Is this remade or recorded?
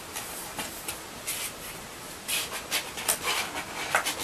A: recorded